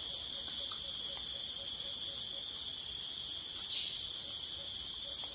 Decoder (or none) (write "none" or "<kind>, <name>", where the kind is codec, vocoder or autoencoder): none